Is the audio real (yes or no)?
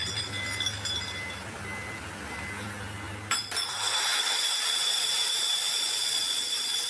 yes